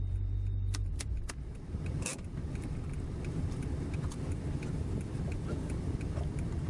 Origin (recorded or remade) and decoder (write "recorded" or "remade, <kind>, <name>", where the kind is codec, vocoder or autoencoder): remade, vocoder, BigVGAN v2